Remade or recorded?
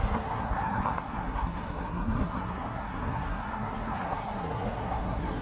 remade